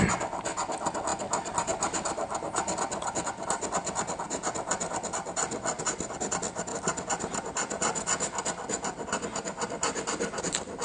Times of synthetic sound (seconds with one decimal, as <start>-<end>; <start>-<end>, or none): none

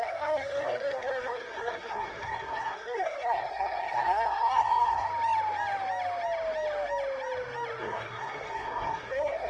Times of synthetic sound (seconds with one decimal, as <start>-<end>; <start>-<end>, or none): 0.0-5.1; 7.8-9.5

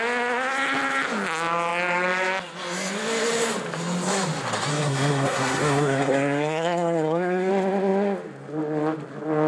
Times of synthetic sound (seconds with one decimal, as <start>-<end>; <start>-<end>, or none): 4.7-7.5

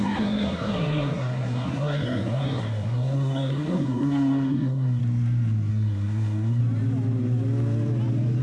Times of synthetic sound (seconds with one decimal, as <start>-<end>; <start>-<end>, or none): 0.0-5.0; 5.7-6.6

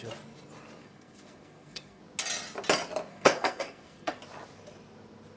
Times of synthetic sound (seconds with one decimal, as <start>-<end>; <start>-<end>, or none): 0.8-2.0; 3.1-4.2

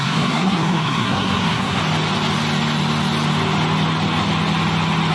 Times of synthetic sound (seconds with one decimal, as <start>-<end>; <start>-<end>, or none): 0.0-1.8